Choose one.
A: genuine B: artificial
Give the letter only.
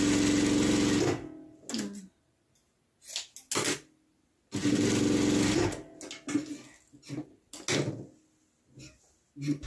A